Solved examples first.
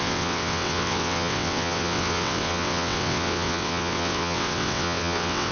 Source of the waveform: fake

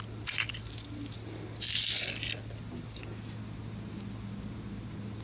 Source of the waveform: real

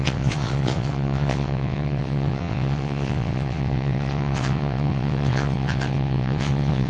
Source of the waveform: fake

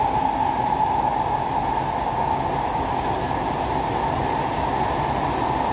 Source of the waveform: real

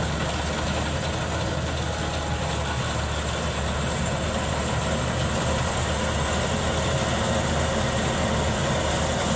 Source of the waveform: real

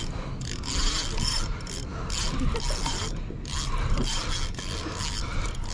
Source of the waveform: real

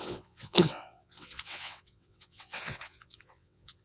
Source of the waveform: fake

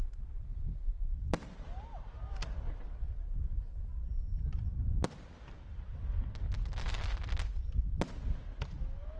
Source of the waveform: real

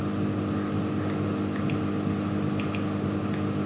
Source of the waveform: real